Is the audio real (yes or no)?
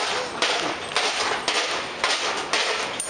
yes